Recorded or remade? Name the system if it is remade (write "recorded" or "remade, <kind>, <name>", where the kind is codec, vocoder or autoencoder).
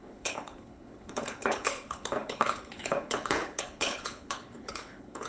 remade, codec, HILCodec